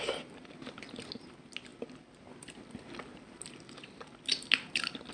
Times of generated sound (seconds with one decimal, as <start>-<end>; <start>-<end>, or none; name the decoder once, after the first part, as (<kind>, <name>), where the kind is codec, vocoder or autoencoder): none